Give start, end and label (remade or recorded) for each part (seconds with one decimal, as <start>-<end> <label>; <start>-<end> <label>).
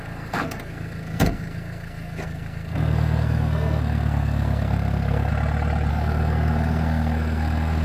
0.0-5.3 remade; 5.3-5.9 recorded; 5.9-7.8 remade